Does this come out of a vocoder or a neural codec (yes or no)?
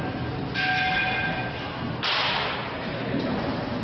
no